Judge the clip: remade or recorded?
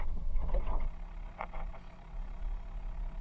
remade